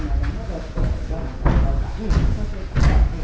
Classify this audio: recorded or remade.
recorded